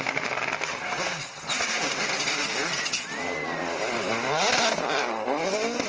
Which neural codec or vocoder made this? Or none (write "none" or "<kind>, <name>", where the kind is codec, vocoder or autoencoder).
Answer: none